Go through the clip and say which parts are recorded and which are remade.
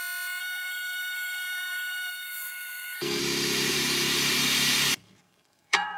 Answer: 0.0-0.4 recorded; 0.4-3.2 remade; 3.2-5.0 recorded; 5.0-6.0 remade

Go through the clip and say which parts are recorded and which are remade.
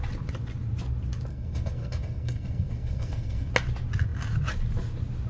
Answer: 0.0-1.3 recorded; 1.3-3.5 remade; 3.5-5.3 recorded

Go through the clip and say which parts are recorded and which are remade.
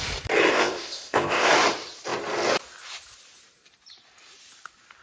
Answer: 0.0-0.5 recorded; 0.5-1.5 remade; 1.5-5.0 recorded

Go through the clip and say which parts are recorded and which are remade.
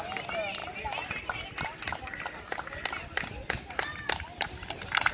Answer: 0.0-5.1 recorded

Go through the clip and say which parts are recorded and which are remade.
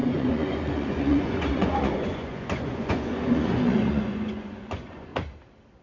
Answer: 0.0-5.1 remade; 5.1-5.8 recorded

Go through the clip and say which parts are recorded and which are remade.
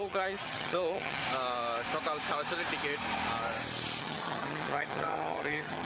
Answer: 0.0-1.2 remade; 1.2-4.0 recorded; 4.0-5.9 remade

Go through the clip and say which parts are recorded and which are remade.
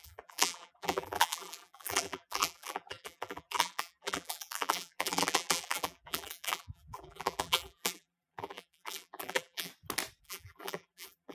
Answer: 0.0-9.7 remade; 9.7-10.2 recorded; 10.2-11.3 remade